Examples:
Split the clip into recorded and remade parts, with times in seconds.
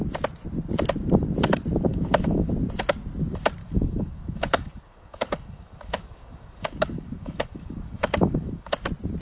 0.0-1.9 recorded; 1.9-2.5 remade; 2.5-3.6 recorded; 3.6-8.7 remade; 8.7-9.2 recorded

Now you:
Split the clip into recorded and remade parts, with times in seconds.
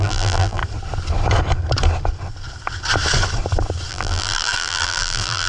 0.0-0.6 remade; 0.6-3.9 recorded; 3.9-5.5 remade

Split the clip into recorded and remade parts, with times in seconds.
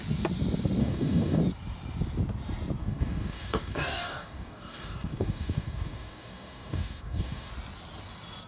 0.0-0.8 recorded; 0.8-1.4 remade; 1.4-2.8 recorded; 2.8-7.5 remade; 7.5-8.5 recorded